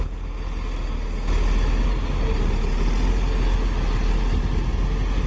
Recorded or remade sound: recorded